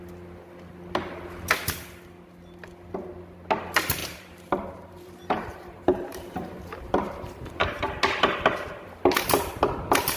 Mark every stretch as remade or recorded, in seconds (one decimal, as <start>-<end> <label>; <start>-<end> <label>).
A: 0.0-4.0 recorded; 4.0-7.8 remade; 7.8-10.2 recorded